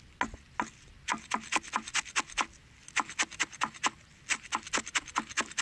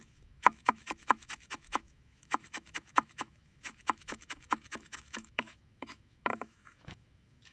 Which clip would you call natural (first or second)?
first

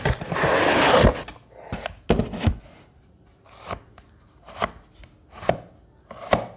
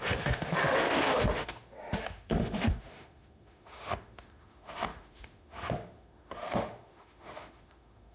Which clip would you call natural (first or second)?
first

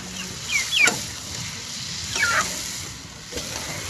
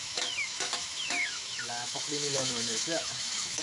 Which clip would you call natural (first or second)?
first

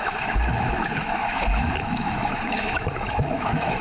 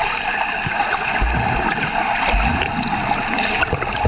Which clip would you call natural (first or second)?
second